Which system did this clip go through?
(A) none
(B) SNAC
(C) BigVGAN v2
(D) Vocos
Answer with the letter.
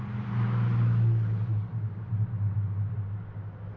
A